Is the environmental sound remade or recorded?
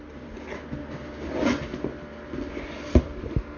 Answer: recorded